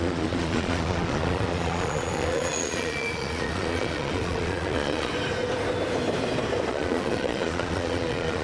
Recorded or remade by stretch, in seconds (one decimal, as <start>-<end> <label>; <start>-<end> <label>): 0.0-5.1 remade; 5.1-6.7 recorded; 6.7-8.4 remade